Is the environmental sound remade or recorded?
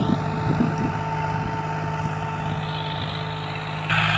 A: recorded